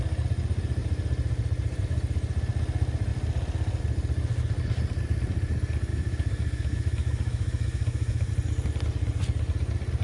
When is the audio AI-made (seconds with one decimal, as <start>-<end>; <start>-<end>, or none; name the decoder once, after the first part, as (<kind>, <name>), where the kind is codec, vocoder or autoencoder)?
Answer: 5.9-8.3 (autoencoder, DAC-VAE)